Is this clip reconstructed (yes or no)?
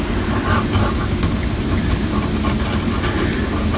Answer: no